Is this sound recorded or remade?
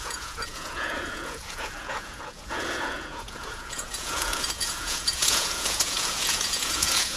remade